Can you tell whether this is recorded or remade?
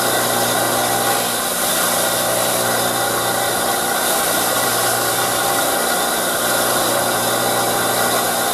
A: recorded